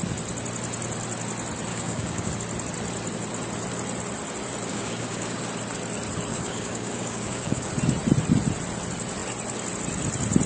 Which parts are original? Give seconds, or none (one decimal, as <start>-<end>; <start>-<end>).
0.0-1.7; 2.3-4.7; 5.4-6.3; 7.7-10.5